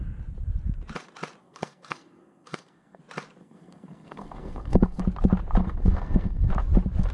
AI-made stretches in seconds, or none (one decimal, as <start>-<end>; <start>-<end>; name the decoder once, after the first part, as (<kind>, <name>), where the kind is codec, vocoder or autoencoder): 1.4-3.0 (codec, SNAC); 3.4-5.0; 5.6-6.5